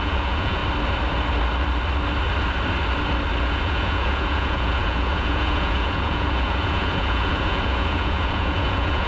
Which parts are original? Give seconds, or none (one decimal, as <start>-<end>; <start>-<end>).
0.6-3.4